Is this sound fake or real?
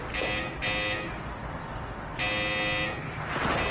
real